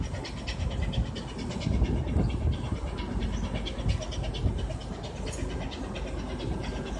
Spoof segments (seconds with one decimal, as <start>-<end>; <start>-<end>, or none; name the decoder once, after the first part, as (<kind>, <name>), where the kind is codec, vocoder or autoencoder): none